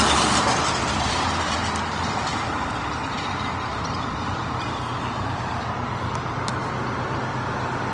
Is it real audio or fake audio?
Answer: real